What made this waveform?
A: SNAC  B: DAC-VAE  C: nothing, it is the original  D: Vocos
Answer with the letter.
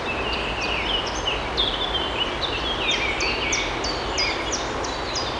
C